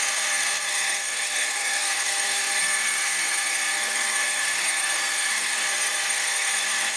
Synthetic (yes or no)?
yes